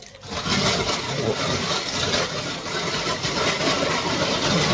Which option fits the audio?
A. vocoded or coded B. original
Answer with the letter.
B